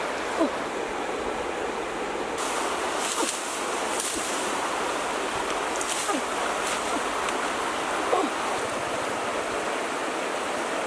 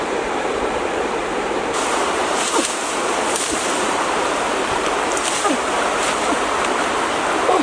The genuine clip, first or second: first